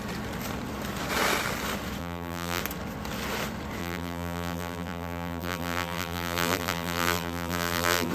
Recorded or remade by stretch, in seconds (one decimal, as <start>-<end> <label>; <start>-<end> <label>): 0.0-2.0 recorded; 2.0-2.6 remade; 2.6-3.8 recorded; 3.8-8.1 remade